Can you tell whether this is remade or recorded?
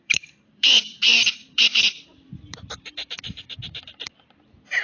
remade